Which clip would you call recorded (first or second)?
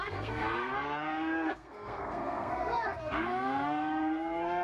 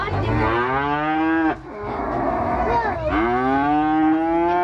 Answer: second